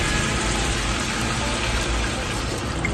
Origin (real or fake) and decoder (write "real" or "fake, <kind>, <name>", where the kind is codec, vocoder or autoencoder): real